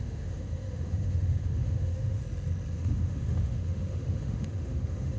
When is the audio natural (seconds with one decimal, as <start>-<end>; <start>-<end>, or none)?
2.2-2.7